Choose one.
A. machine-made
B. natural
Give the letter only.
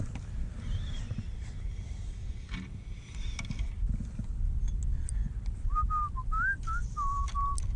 B